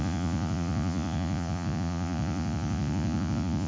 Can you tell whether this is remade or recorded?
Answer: remade